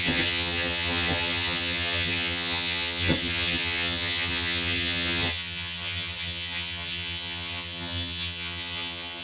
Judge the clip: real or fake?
fake